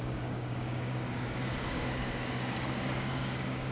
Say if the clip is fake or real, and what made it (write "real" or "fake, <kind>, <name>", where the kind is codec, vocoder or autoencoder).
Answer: fake, codec, DAC